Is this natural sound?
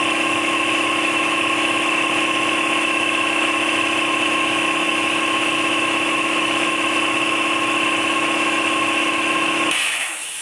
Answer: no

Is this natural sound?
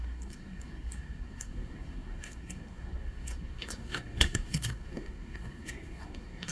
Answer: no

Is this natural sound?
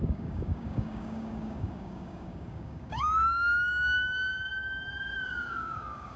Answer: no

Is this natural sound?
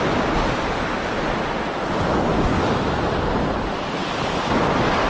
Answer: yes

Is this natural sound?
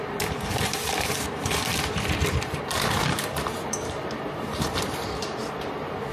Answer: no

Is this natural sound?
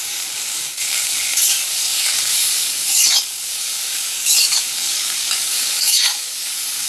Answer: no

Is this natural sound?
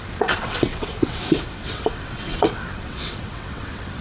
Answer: no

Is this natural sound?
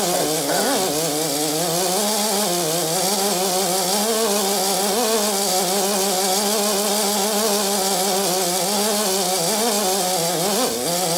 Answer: yes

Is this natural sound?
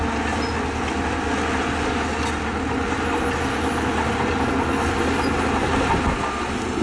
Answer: yes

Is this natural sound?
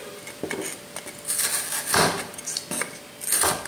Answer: yes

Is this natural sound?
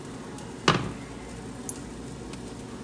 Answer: yes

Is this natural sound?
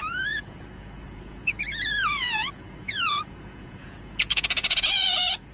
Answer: no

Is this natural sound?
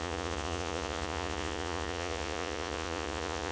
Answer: no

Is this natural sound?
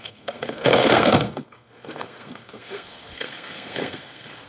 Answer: no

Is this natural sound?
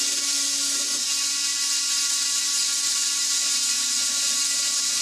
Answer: yes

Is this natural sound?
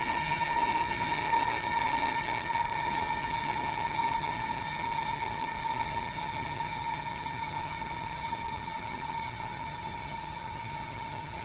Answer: no